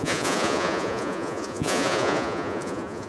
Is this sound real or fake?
fake